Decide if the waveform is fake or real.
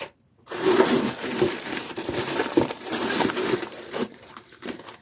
fake